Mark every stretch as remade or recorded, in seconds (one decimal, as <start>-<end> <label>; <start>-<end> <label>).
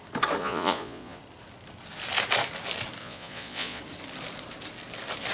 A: 0.0-0.4 recorded; 0.4-1.2 remade; 1.2-3.0 recorded; 3.0-3.8 remade; 3.8-5.3 recorded